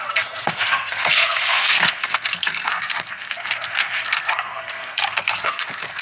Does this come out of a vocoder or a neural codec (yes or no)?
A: yes